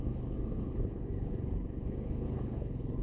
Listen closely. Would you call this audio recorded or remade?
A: remade